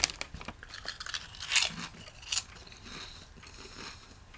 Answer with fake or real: real